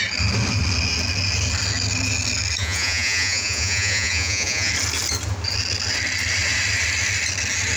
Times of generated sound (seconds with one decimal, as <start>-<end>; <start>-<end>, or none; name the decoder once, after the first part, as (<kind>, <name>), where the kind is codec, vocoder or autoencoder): 2.6-4.7 (vocoder, Vocos)